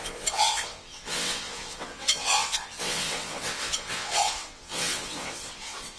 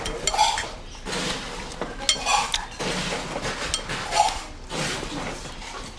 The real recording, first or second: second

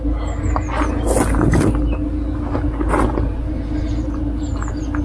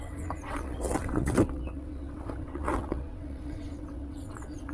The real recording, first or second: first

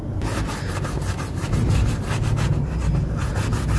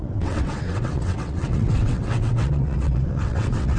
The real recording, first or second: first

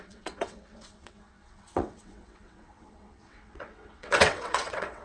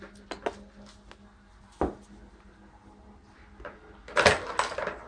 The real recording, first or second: second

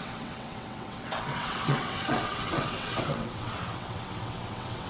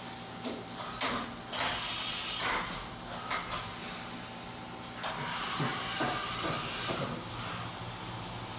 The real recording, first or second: second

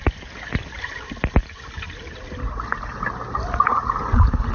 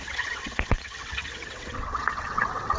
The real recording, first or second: first